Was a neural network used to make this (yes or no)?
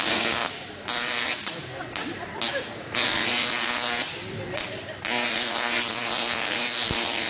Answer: no